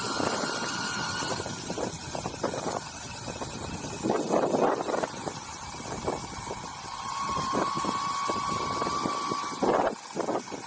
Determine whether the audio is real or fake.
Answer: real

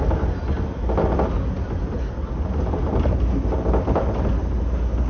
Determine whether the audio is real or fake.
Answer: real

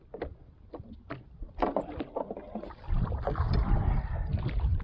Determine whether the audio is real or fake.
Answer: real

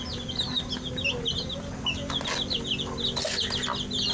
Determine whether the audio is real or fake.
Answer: real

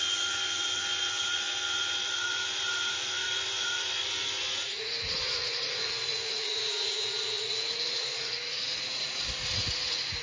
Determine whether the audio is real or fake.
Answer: fake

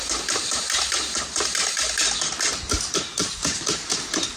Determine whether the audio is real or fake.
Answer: real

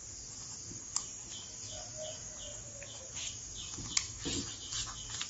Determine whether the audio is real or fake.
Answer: real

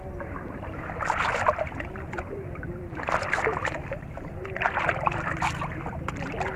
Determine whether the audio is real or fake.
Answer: fake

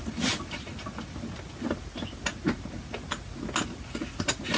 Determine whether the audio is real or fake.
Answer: real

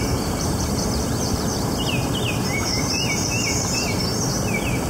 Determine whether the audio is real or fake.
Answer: fake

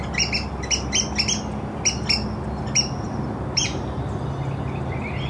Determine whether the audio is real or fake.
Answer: real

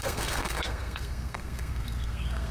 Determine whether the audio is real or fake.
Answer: fake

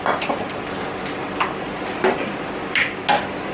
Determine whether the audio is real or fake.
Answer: real